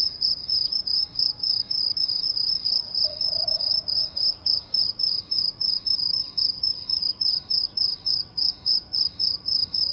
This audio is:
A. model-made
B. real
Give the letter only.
A